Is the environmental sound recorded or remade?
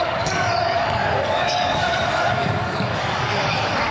remade